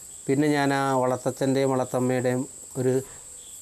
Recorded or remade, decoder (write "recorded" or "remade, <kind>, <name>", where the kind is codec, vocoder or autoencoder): recorded